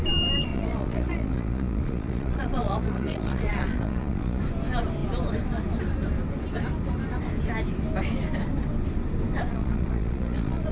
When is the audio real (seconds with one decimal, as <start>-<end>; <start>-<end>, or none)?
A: 0.0-0.5; 4.4-9.5